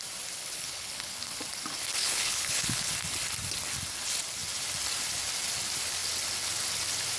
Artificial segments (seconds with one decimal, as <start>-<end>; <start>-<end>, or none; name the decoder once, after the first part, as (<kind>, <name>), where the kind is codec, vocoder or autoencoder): 0.4-1.4 (codec, HILCodec); 2.0-2.9

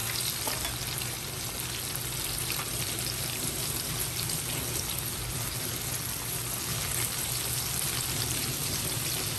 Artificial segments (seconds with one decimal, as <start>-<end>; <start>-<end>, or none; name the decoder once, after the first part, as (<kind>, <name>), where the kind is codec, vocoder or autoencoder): none